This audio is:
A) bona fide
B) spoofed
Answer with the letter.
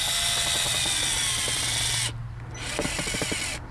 A